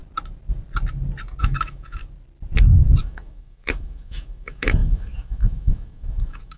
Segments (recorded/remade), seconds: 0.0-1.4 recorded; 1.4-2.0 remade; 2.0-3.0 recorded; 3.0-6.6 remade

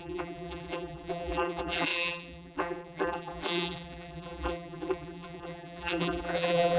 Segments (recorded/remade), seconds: 0.0-6.8 remade